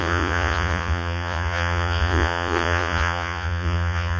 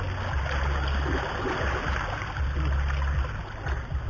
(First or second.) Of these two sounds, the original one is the second